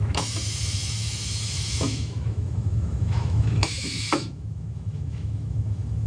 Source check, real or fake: fake